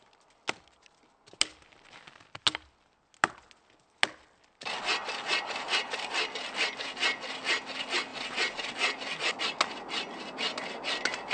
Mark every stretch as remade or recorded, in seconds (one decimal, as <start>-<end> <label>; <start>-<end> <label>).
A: 0.0-11.3 recorded